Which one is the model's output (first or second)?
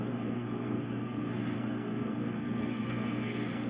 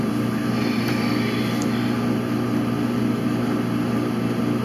first